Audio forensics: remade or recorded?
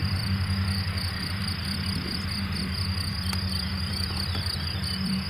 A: remade